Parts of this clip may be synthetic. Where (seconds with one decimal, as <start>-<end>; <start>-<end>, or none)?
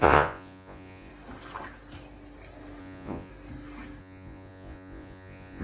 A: 0.0-1.1; 2.8-3.3; 4.0-5.6